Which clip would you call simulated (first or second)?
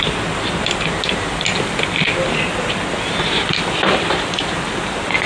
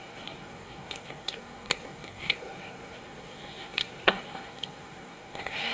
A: second